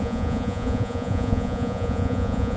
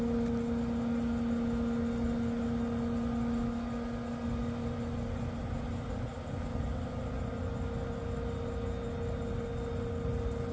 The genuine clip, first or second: second